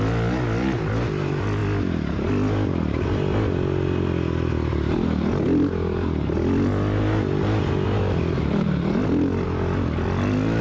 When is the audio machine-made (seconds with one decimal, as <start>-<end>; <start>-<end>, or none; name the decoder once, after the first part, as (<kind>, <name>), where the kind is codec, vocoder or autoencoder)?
none

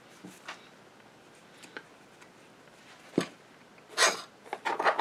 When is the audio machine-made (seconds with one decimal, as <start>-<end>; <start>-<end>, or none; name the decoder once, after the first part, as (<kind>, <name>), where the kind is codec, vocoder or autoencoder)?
none

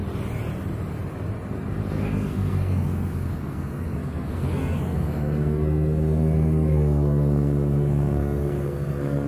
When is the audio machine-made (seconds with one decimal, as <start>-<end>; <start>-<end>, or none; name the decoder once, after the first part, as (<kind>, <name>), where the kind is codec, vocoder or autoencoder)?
1.9-9.3 (codec, SNAC)

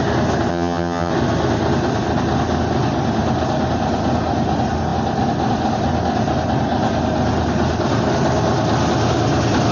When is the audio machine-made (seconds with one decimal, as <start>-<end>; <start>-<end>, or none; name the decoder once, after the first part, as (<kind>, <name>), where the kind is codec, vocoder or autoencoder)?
0.5-1.1 (vocoder, HiFi-GAN)

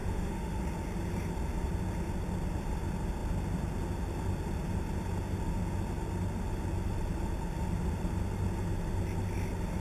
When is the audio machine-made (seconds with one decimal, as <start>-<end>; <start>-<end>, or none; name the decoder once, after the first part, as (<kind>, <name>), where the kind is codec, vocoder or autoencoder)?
0.0-0.6 (autoencoder, DAC-VAE)

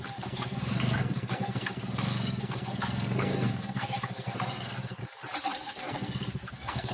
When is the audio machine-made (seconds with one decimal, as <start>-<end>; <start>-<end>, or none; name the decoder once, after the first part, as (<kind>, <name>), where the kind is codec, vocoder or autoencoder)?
0.0-5.0 (codec, SNAC); 5.5-6.9

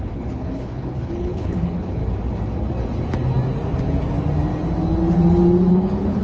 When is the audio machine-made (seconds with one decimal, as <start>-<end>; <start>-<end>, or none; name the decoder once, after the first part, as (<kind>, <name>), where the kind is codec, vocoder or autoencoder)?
0.0-2.0 (codec, HILCodec); 5.7-6.2